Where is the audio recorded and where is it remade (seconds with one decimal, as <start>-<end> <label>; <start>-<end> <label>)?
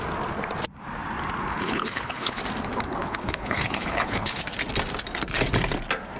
0.0-1.5 recorded; 1.5-2.4 remade; 2.4-3.0 recorded; 3.0-4.4 remade; 4.4-6.2 recorded